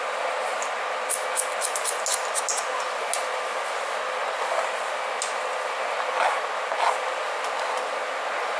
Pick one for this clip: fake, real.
real